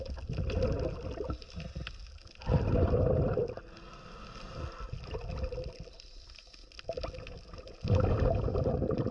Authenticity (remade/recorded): recorded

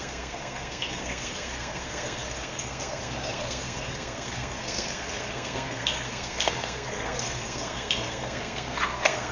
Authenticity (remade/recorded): remade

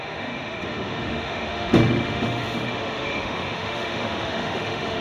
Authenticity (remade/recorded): remade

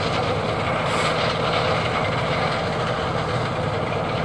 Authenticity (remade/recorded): recorded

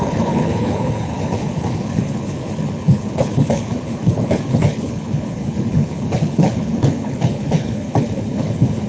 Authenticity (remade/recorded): remade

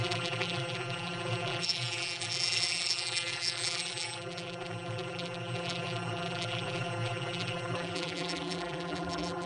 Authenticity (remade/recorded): remade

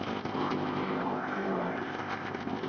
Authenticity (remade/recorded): remade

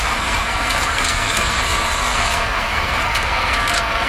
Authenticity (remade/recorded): remade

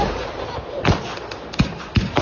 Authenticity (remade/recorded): recorded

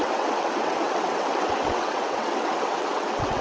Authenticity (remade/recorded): remade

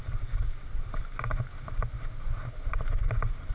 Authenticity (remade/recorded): remade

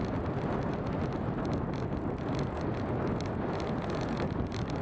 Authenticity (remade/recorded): recorded